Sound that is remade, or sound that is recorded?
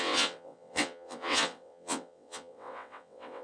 remade